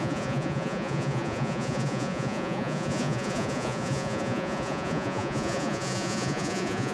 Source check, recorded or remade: remade